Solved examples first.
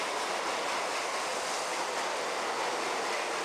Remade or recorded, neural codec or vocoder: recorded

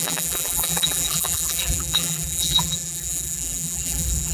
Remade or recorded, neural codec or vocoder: remade, vocoder, BigVGAN v2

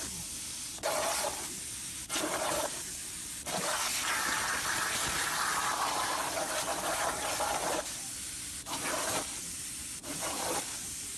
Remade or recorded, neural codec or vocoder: recorded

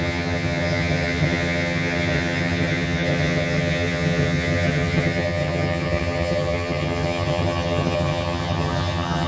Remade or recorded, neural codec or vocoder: remade, vocoder, HiFi-GAN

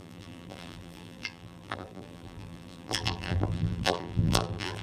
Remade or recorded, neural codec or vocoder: remade, vocoder, BigVGAN v2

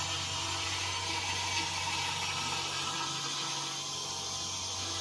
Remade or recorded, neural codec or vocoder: recorded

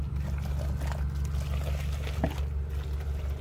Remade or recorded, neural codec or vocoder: recorded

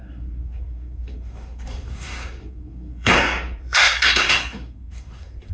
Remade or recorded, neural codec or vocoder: remade, codec, SNAC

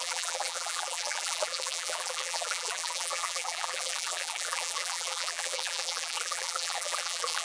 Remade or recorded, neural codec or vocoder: remade, vocoder, BigVGAN v2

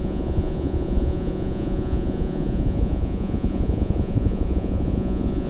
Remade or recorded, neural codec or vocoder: remade, vocoder, Vocos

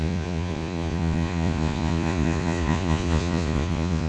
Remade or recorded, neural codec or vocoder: remade, vocoder, Vocos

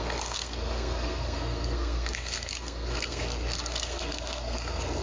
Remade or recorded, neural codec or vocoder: remade, codec, SNAC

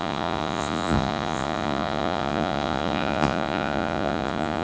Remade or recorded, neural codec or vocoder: remade, vocoder, Vocos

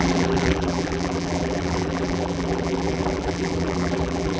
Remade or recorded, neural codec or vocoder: remade, vocoder, BigVGAN v2